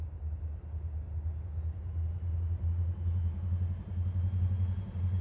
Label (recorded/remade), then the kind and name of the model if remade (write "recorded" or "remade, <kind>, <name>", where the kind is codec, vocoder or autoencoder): recorded